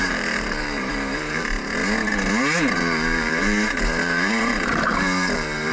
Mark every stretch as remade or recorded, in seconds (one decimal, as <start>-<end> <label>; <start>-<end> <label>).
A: 0.0-1.8 remade; 1.8-2.7 recorded; 2.7-5.7 remade